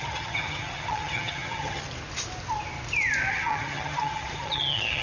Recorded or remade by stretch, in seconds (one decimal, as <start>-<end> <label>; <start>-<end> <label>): 0.0-1.8 remade; 1.8-3.3 recorded; 3.3-5.0 remade